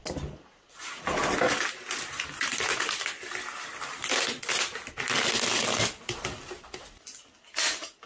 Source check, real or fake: real